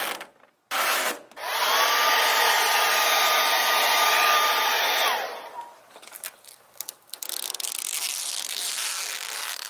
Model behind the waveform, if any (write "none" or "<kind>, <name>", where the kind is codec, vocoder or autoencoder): none